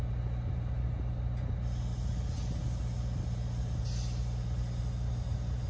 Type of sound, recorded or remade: recorded